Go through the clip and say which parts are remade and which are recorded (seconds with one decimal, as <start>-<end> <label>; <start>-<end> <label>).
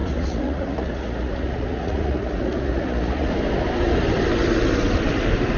0.0-3.3 remade; 3.3-5.6 recorded